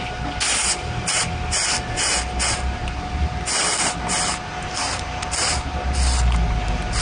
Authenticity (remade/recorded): recorded